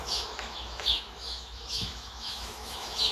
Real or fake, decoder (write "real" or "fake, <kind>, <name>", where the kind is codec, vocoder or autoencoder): fake, autoencoder, DAC-VAE